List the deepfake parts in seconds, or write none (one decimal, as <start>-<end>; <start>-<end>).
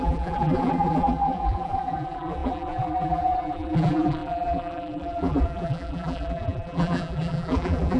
0.0-8.0